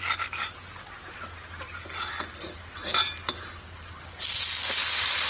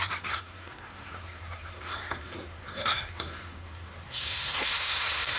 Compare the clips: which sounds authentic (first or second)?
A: first